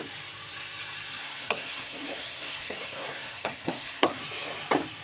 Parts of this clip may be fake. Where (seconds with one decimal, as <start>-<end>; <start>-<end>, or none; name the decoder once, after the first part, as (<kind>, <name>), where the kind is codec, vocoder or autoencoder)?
1.2-4.2 (codec, SNAC)